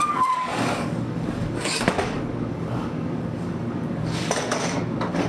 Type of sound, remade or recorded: remade